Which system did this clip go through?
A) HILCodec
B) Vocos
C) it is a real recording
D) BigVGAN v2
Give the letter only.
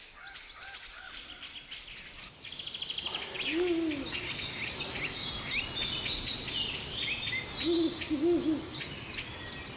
C